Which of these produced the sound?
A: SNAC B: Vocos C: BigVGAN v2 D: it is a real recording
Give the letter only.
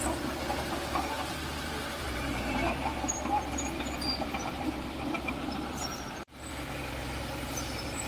C